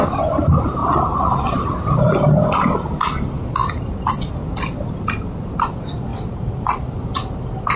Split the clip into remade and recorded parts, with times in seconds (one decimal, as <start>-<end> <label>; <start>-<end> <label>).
0.0-0.8 recorded; 0.8-1.7 remade; 1.7-3.6 recorded; 3.6-4.2 remade; 4.2-6.1 recorded; 6.1-7.0 remade; 7.0-7.8 recorded